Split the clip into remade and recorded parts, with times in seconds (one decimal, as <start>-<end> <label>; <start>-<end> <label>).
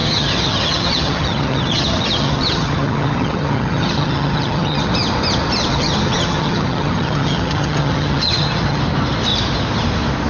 0.0-4.9 remade; 4.9-5.7 recorded; 5.7-8.8 remade; 8.8-10.3 recorded